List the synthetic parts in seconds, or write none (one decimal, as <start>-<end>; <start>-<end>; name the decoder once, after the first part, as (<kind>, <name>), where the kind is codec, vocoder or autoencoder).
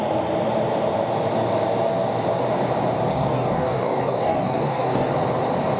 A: 3.1-5.1 (codec, DAC)